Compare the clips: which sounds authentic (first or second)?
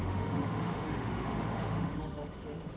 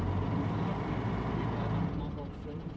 second